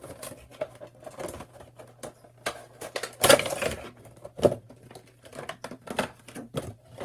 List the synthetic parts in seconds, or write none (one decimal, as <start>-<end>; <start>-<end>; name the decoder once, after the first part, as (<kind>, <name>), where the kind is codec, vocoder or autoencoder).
none